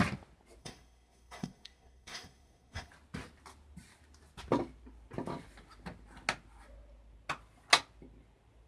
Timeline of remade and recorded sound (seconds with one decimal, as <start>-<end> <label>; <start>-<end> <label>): 0.0-0.6 recorded; 0.6-2.9 remade; 2.9-8.7 recorded